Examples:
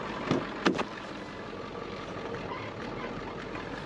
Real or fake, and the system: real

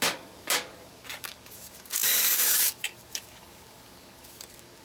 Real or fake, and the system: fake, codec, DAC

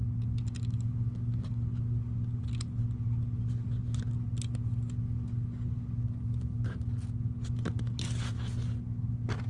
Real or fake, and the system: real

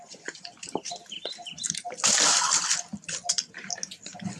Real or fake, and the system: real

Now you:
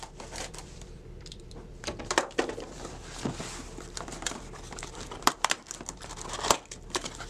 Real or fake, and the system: fake, vocoder, BigVGAN v2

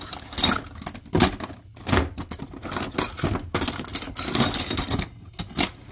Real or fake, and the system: real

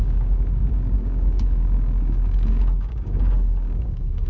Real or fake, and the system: fake, codec, DAC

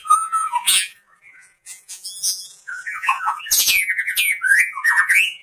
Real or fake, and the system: fake, vocoder, Vocos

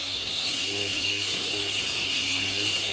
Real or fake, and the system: fake, codec, SNAC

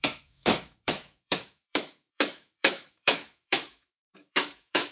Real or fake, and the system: fake, autoencoder, DAC-VAE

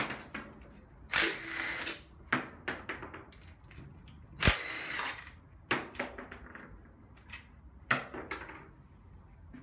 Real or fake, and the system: real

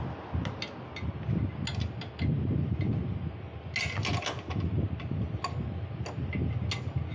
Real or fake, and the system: real